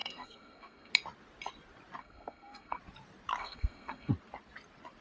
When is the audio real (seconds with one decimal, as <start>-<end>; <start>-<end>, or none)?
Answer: 0.9-2.0; 2.8-3.4; 4.1-5.0

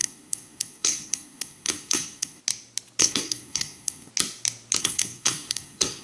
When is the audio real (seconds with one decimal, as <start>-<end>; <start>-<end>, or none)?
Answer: 2.4-3.0; 4.1-4.8

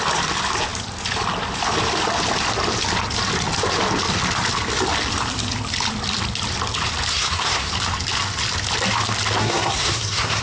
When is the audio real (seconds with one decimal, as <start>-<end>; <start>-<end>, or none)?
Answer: 0.0-7.1; 7.7-9.4

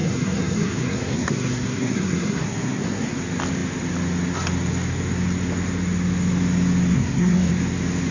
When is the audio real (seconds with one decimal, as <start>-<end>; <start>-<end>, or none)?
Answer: 3.2-6.9; 7.5-8.1

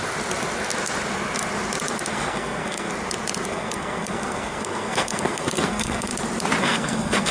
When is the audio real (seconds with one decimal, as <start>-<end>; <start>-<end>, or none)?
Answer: 0.0-2.1; 2.9-3.5; 6.1-6.6

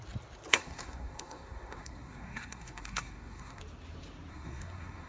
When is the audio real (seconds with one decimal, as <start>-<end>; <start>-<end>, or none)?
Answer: 0.0-0.5; 3.6-4.3

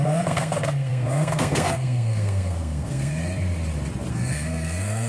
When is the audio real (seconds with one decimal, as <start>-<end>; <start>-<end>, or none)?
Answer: 3.2-4.1

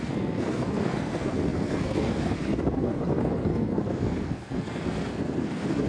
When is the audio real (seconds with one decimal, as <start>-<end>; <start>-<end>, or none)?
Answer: none